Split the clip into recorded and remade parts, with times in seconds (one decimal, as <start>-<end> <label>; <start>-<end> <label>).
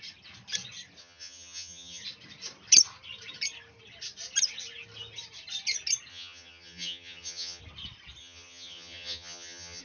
0.0-1.0 recorded; 1.0-2.0 remade; 2.0-6.1 recorded; 6.1-7.6 remade; 7.6-8.2 recorded; 8.2-9.8 remade